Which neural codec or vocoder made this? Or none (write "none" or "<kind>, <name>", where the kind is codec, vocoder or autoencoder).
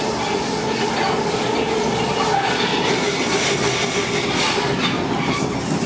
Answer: none